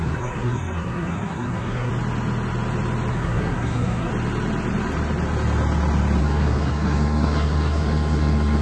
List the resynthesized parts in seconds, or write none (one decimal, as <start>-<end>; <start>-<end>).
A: 0.0-1.9; 3.1-4.1; 6.2-8.6